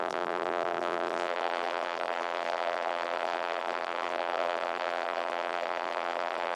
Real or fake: fake